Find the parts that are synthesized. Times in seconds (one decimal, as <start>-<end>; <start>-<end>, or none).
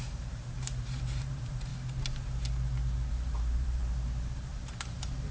0.0-1.7; 3.1-3.8; 4.4-5.3